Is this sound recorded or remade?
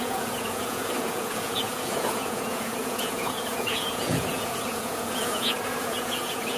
remade